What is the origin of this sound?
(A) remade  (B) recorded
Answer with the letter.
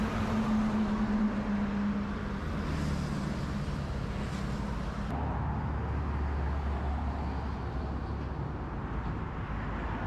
B